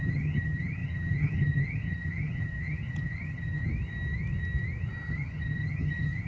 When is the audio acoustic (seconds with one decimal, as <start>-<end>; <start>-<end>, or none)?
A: 3.7-5.1